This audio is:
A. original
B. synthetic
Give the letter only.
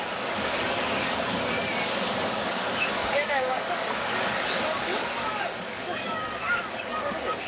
B